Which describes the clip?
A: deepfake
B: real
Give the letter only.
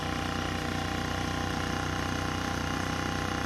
B